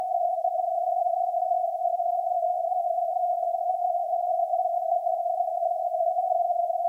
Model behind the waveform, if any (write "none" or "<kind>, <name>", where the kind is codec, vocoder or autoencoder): vocoder, BigVGAN v2